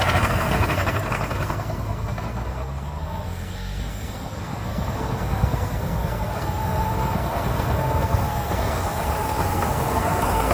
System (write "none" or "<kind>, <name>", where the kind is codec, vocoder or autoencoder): codec, SNAC